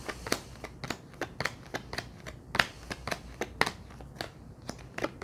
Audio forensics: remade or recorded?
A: recorded